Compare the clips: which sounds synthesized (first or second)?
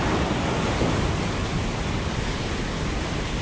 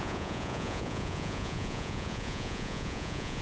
second